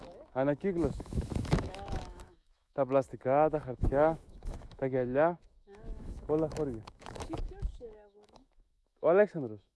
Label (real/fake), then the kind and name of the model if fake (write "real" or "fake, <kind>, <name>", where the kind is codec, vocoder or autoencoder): fake, autoencoder, DAC-VAE